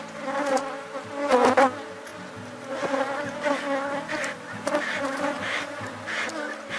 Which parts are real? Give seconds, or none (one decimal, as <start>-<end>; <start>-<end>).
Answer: 0.0-6.8